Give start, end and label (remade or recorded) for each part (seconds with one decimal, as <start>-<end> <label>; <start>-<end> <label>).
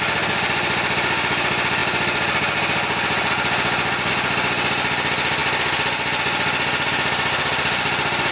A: 0.0-8.3 recorded